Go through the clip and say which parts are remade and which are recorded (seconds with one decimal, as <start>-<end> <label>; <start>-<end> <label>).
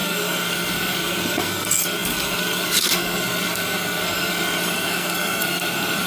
0.0-6.1 remade